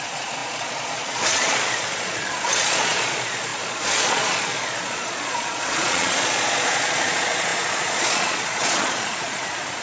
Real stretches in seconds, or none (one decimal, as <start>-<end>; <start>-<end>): none